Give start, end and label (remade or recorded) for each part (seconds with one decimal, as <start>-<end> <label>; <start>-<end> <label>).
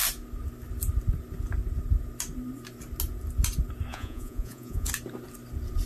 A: 0.0-3.9 recorded; 3.9-4.9 remade; 4.9-5.9 recorded